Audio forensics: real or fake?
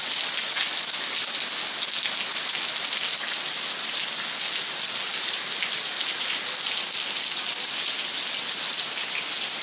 real